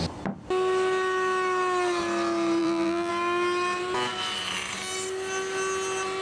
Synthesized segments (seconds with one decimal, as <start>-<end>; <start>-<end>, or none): 2.6-3.1